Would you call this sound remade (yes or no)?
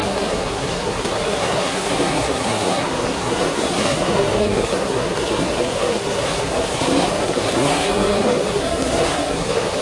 yes